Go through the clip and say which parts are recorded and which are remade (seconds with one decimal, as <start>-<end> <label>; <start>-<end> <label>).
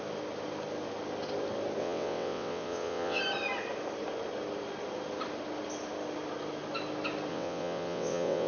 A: 0.0-1.8 recorded; 1.8-3.2 remade; 3.2-7.3 recorded; 7.3-8.5 remade